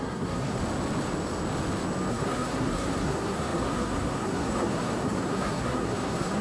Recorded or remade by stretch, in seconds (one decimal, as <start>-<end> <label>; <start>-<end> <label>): 0.0-0.6 remade; 0.6-2.1 recorded; 2.1-6.4 remade